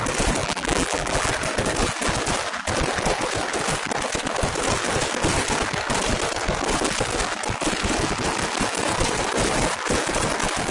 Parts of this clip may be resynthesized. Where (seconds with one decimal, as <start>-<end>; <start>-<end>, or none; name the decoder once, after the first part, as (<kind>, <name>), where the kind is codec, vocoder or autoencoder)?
0.4-1.3 (vocoder, BigVGAN v2)